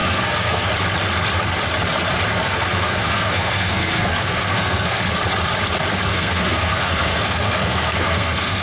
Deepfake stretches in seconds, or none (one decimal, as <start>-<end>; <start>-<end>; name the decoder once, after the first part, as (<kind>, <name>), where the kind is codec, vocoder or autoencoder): 0.0-0.7 (codec, SNAC); 2.3-5.0; 6.1-8.6